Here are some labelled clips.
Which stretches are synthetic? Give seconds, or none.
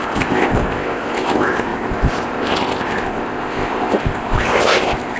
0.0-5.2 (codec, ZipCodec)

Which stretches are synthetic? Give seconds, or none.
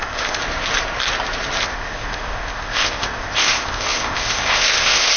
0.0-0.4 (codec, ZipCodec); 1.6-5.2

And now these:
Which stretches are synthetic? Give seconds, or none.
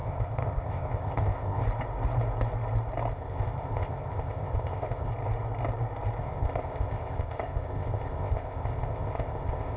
0.0-1.6 (codec, ZipCodec); 3.1-5.1; 6.2-9.8